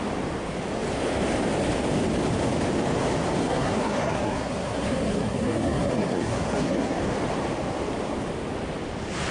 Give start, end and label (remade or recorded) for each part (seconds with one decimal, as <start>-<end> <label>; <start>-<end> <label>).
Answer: 0.0-3.4 recorded; 3.4-7.0 remade; 7.0-9.3 recorded

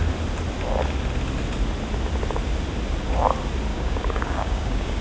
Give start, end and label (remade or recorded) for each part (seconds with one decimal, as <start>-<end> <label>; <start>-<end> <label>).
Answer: 0.0-3.7 recorded; 3.7-5.0 remade

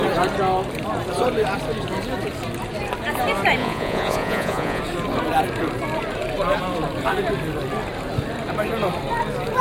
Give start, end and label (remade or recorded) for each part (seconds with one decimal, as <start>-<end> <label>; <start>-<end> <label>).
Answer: 0.0-3.6 recorded; 3.6-4.8 remade; 4.8-9.6 recorded

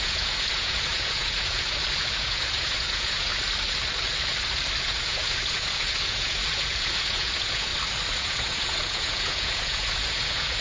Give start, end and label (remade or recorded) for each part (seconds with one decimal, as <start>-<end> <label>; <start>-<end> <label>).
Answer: 0.0-3.3 remade; 3.3-4.8 recorded; 4.8-7.7 remade; 7.7-8.2 recorded; 8.2-10.6 remade